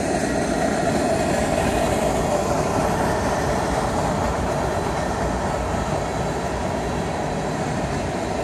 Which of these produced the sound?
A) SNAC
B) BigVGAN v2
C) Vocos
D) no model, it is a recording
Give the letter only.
D